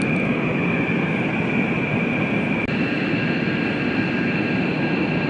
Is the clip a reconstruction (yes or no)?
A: no